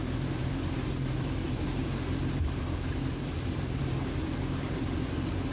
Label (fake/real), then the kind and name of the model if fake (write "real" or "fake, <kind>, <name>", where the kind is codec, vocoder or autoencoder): fake, vocoder, BigVGAN v2